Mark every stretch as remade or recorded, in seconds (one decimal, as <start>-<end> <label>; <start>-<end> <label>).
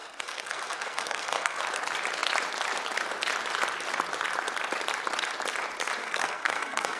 0.0-1.6 remade; 1.6-6.0 recorded; 6.0-7.0 remade